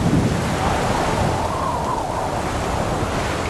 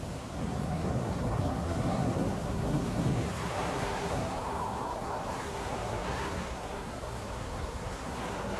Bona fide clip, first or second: first